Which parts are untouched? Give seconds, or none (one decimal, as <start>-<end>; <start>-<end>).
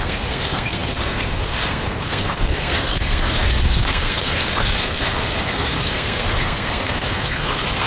none